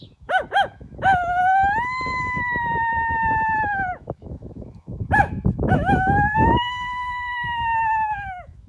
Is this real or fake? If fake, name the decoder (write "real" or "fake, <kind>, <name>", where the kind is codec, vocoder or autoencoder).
fake, autoencoder, DAC-VAE